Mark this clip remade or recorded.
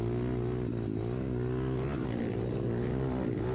recorded